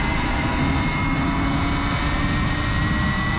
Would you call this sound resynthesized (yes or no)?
no